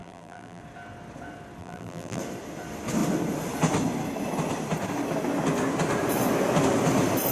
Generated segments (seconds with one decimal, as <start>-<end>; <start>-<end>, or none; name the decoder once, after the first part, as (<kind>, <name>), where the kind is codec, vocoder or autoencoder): 0.0-0.6 (vocoder, BigVGAN v2); 1.6-2.2